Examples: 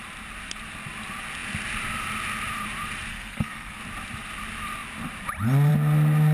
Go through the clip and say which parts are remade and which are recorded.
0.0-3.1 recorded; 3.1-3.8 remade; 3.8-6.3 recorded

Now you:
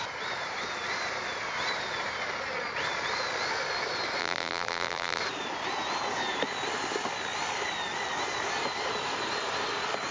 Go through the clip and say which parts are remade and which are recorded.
0.0-4.2 recorded; 4.2-5.2 remade; 5.2-10.1 recorded